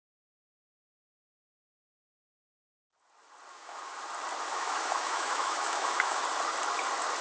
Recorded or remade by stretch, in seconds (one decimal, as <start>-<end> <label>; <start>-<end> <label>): 0.0-3.5 recorded; 3.5-4.0 remade; 4.0-4.5 recorded; 4.5-6.2 remade; 6.2-7.2 recorded